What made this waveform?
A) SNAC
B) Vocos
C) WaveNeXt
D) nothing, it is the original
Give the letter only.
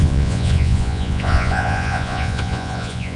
B